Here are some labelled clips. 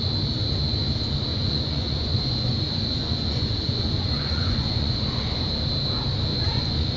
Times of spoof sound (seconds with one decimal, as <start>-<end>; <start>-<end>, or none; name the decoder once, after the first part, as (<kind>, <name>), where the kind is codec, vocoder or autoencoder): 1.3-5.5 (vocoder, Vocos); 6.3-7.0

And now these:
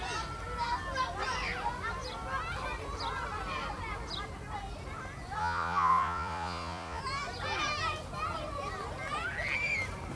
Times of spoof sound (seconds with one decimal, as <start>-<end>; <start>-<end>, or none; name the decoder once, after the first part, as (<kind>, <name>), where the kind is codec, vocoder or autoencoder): 5.4-7.0 (vocoder, Vocos)

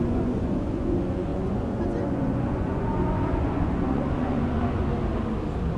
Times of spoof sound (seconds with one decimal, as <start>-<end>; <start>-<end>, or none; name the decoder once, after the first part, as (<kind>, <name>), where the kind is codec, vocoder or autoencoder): 0.0-4.9 (vocoder, Vocos)

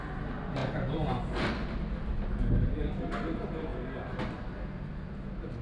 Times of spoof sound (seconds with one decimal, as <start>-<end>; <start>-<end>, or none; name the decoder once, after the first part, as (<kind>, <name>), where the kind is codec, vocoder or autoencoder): none

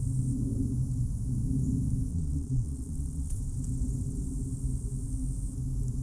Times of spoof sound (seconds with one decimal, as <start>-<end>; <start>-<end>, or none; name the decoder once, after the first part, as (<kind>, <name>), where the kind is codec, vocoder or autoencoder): 2.1-3.4 (vocoder, Vocos)

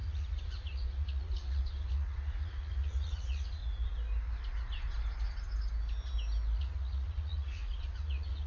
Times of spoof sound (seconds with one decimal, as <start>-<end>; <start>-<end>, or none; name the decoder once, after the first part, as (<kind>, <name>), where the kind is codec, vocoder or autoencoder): 0.0-3.6 (vocoder, Vocos); 6.6-8.5